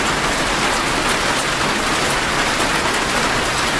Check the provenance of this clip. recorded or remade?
recorded